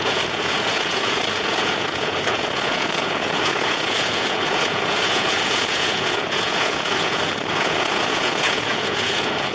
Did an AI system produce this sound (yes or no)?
yes